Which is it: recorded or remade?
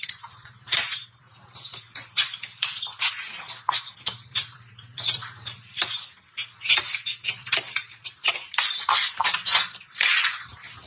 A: remade